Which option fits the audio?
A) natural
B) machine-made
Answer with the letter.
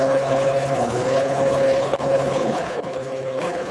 B